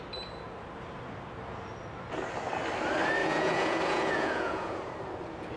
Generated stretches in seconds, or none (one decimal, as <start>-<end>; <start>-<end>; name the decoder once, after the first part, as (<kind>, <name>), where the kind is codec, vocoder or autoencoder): 3.2-4.8 (vocoder, Vocos)